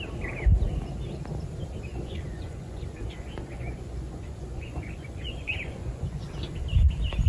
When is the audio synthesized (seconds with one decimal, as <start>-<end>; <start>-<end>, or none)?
1.9-6.3